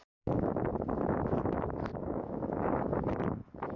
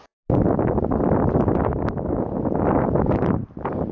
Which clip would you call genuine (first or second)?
second